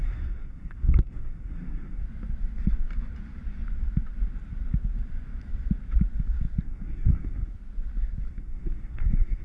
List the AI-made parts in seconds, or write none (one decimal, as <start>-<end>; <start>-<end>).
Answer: 0.0-2.0; 6.6-7.5; 8.3-9.4

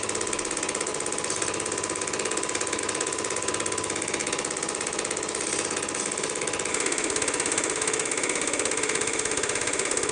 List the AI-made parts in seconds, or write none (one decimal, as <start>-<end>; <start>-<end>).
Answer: 6.7-10.1

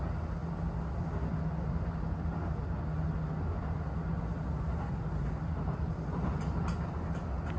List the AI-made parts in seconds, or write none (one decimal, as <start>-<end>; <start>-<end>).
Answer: none

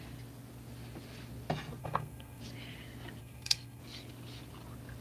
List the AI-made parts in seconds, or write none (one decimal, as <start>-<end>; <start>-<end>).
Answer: 1.8-2.4; 3.2-3.8

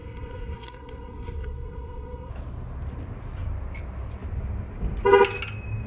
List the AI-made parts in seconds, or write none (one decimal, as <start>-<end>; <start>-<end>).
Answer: 0.0-2.3

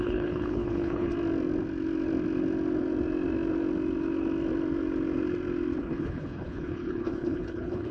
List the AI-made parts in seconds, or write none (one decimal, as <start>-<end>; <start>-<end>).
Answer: 0.0-1.1; 5.8-7.9

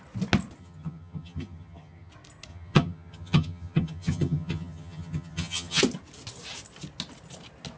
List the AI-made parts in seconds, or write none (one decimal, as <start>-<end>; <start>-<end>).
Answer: 0.6-2.1; 2.5-5.8

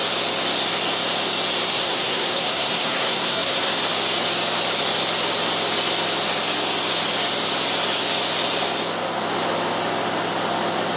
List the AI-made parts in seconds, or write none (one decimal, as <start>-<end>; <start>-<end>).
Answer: 1.7-3.7